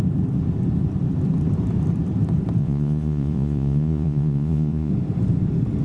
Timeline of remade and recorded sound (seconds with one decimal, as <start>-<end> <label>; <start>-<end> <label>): 0.0-2.6 recorded; 2.6-4.9 remade; 4.9-5.8 recorded